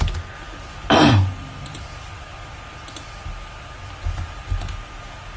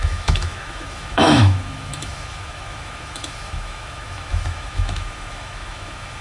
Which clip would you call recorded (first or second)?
first